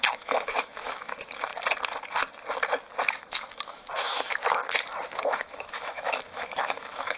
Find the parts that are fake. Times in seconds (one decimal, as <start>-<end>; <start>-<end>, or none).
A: 0.0-1.5; 3.0-4.6; 5.2-7.2